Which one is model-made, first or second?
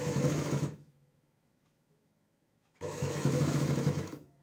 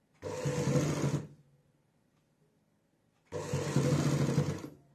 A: first